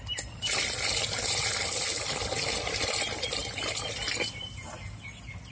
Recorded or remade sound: recorded